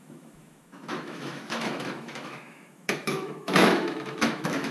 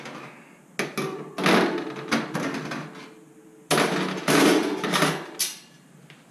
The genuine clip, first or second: second